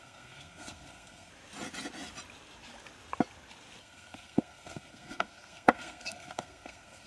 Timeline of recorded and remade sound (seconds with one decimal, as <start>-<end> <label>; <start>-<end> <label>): 0.0-1.3 remade; 1.3-3.8 recorded; 3.8-7.1 remade

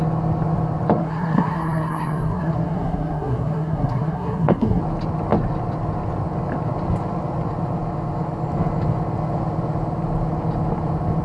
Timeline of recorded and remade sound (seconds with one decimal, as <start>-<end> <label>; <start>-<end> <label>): 0.0-1.0 recorded; 1.0-4.8 remade; 4.8-11.2 recorded

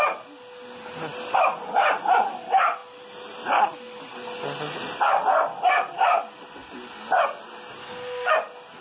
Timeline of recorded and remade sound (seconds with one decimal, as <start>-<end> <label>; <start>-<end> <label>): 0.0-7.8 recorded; 7.8-8.3 remade; 8.3-8.8 recorded